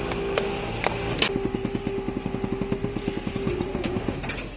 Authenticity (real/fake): real